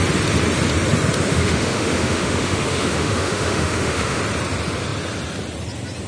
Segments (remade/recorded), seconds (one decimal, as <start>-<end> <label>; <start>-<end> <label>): 0.0-1.3 recorded; 1.3-4.2 remade; 4.2-6.1 recorded